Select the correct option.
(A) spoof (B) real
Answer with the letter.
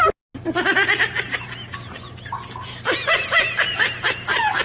B